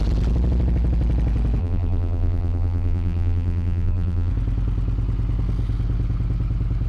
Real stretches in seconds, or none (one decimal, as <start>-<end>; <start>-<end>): 0.0-1.6; 4.3-6.9